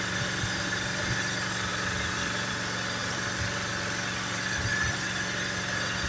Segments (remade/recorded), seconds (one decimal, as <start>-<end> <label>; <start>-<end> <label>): 0.0-1.7 recorded; 1.7-2.5 remade; 2.5-3.0 recorded; 3.0-3.7 remade; 3.7-6.1 recorded